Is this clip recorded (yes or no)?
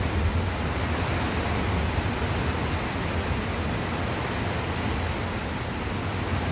yes